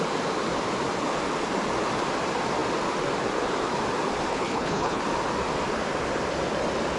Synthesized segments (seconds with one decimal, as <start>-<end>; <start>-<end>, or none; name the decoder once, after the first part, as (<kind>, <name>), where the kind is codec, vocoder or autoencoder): 4.3-5.0 (codec, HILCodec)